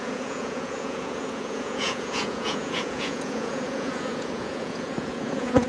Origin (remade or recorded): remade